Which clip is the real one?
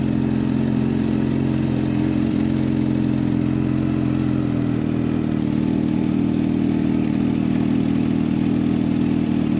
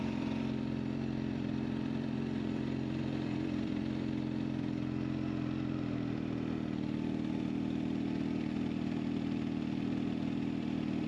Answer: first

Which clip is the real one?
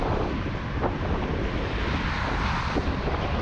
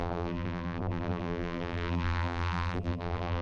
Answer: first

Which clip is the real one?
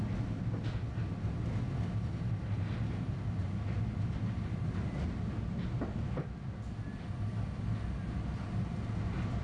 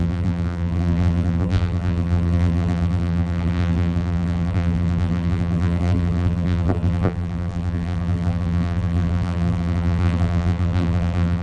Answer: first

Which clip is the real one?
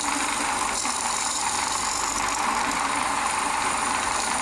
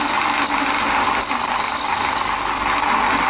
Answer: second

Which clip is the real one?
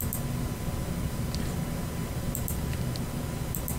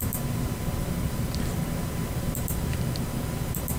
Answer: first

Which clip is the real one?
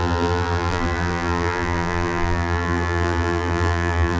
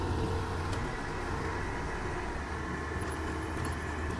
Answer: second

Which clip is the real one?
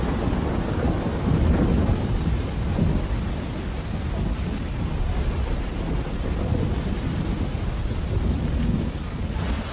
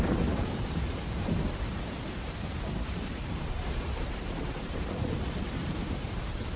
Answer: first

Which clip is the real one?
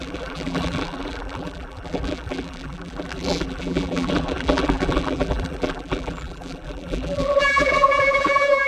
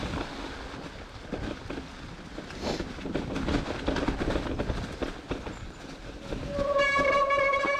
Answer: second